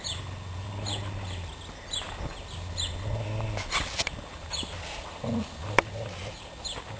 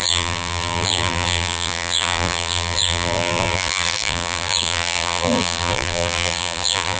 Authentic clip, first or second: first